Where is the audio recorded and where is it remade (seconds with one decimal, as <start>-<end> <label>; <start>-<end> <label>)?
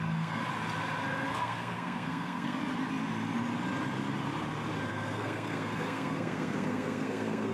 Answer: 0.0-0.4 remade; 0.4-1.3 recorded; 1.3-2.6 remade; 2.6-4.9 recorded; 4.9-7.5 remade